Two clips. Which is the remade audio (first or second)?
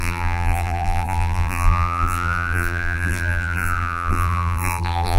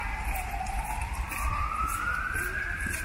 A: first